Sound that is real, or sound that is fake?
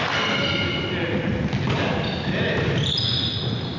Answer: real